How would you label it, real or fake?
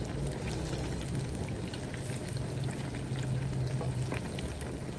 real